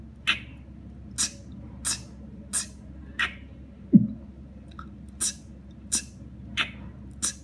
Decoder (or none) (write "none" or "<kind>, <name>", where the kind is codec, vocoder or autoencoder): none